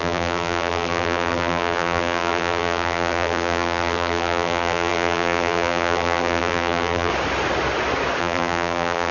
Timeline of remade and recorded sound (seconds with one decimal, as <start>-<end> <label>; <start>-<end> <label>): 0.0-7.1 remade; 7.1-8.2 recorded; 8.2-9.1 remade